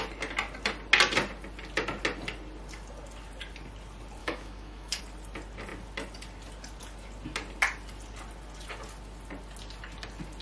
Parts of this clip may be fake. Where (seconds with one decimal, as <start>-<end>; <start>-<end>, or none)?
4.2-5.0